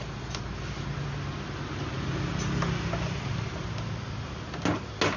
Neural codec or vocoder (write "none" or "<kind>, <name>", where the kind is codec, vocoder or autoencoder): none